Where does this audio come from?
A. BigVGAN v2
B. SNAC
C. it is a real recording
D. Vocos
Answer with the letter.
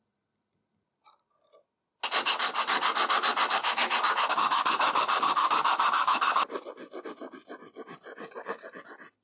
C